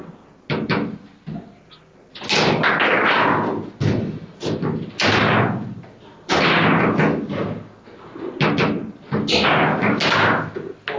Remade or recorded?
recorded